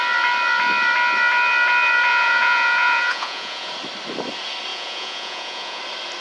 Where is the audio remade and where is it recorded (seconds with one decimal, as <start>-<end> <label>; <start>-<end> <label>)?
0.0-2.1 recorded; 2.1-3.7 remade; 3.7-4.7 recorded; 4.7-5.8 remade; 5.8-6.2 recorded